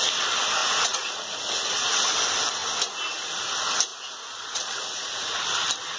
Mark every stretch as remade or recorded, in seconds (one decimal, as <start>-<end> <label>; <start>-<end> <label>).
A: 0.0-0.6 recorded; 0.6-1.7 remade; 1.7-3.9 recorded; 3.9-5.4 remade; 5.4-6.0 recorded